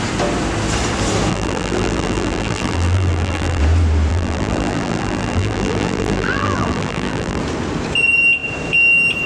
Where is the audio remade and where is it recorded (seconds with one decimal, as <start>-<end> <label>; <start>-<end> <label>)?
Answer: 0.0-1.3 recorded; 1.3-3.6 remade; 3.6-4.1 recorded; 4.1-7.4 remade; 7.4-9.3 recorded